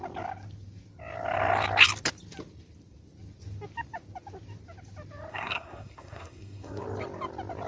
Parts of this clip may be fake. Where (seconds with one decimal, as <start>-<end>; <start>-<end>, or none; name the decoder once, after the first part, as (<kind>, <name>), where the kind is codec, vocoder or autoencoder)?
5.3-6.8 (codec, SNAC)